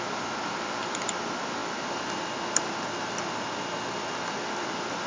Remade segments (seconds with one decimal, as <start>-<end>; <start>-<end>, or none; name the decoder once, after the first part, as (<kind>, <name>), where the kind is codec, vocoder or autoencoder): none